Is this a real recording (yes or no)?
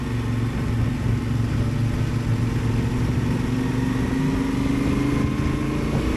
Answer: yes